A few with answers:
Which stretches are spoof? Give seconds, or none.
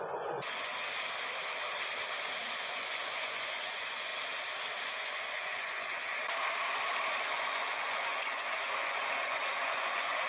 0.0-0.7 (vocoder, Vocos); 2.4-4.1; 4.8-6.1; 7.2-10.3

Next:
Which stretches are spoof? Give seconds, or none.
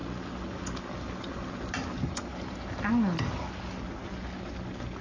2.3-2.9 (vocoder, BigVGAN v2)